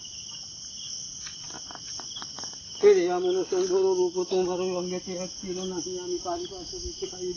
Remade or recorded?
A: recorded